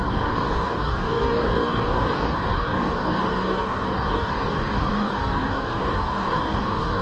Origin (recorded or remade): remade